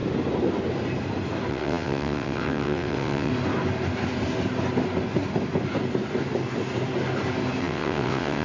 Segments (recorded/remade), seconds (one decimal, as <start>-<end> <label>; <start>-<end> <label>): 0.0-1.5 recorded; 1.5-3.3 remade; 3.3-7.6 recorded; 7.6-8.4 remade